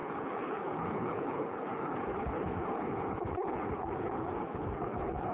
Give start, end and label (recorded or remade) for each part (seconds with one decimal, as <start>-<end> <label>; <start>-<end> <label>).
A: 0.0-5.3 remade